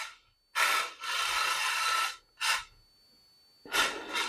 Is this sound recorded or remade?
recorded